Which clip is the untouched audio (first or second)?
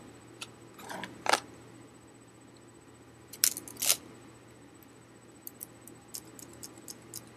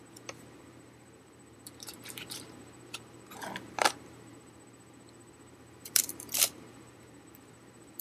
first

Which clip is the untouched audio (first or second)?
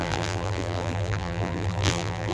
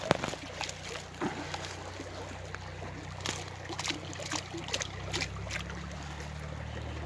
second